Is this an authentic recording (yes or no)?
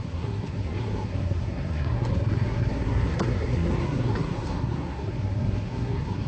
no